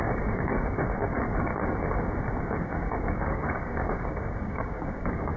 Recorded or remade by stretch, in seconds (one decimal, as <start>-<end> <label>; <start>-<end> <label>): 0.0-1.5 remade; 1.5-2.4 recorded; 2.4-5.4 remade